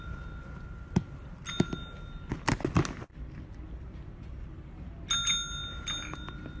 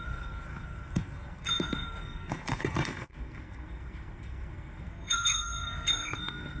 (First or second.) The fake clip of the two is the second